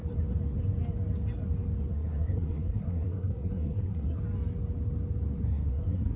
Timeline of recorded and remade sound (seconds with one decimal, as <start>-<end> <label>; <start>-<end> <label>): 0.0-1.9 recorded; 1.9-4.2 remade; 4.2-5.4 recorded; 5.4-6.2 remade